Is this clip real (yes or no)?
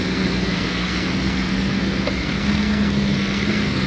no